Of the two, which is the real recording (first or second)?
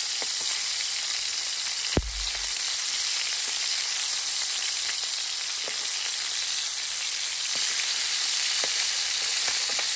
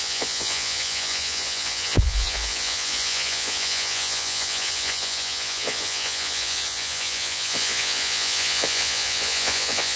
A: first